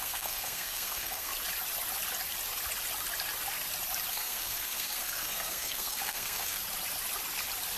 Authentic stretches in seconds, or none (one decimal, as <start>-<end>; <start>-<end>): 1.3-4.1; 6.6-7.8